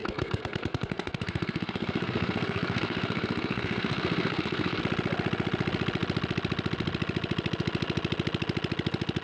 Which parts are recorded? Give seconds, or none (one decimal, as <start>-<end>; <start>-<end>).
4.8-9.2